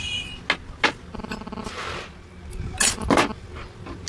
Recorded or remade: recorded